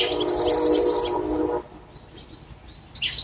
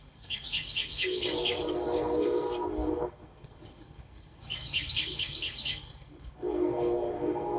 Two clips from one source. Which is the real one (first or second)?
first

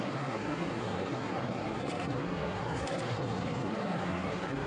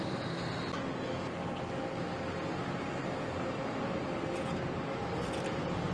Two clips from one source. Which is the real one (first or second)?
second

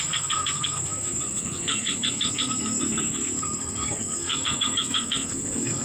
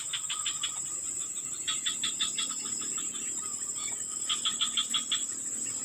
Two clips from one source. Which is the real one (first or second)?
second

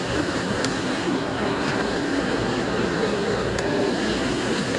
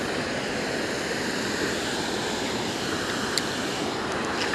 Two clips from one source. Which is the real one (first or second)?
second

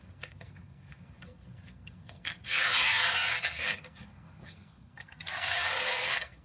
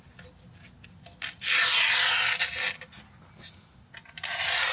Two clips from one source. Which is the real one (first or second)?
second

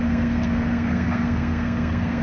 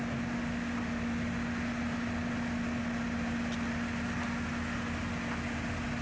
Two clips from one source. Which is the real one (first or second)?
second